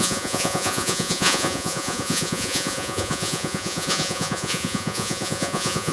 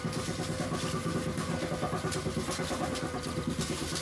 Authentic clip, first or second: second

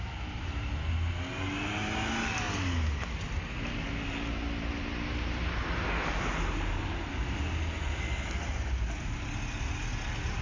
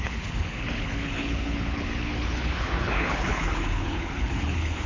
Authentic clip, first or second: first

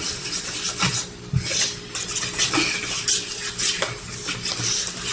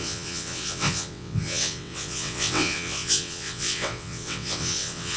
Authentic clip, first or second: first